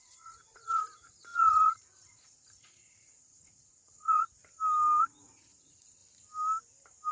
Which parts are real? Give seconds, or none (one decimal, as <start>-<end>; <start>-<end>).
4.4-5.0; 6.0-7.1